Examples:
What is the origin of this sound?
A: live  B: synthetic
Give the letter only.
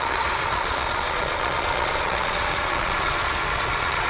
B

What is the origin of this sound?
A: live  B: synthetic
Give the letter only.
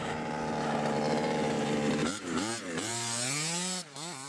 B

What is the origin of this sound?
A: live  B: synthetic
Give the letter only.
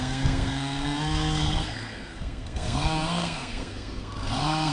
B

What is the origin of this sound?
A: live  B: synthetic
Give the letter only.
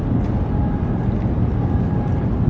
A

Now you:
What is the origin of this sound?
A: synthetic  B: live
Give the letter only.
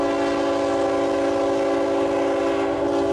B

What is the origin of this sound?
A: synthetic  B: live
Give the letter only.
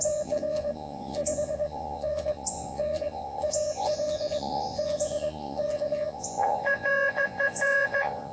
A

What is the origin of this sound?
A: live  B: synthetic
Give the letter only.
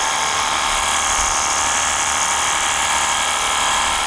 B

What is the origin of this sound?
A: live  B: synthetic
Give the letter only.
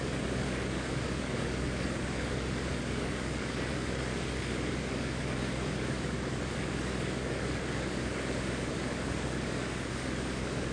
B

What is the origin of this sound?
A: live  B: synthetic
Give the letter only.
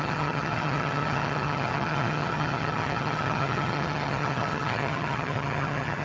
B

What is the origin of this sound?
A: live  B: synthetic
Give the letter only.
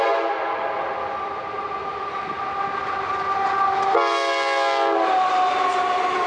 A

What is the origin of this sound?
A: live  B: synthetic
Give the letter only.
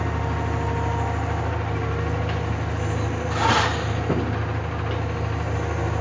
A